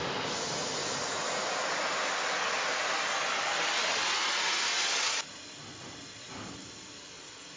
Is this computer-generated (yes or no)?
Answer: no